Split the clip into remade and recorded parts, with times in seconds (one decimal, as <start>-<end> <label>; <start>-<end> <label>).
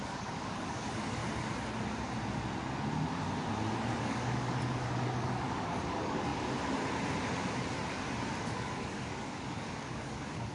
0.0-1.2 remade; 1.2-3.9 recorded; 3.9-6.3 remade; 6.3-8.4 recorded; 8.4-10.5 remade